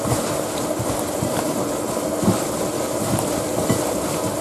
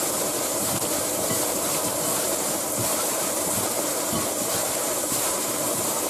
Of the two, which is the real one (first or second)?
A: first